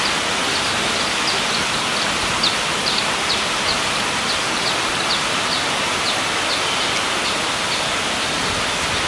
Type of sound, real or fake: real